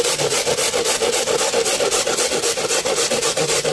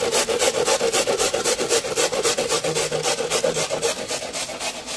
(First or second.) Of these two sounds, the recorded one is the second